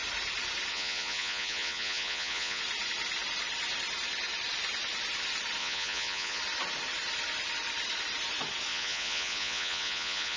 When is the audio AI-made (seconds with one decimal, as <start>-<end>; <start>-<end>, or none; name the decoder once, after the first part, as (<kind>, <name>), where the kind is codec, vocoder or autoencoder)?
0.7-2.6 (vocoder, Vocos); 5.6-6.4; 8.7-10.4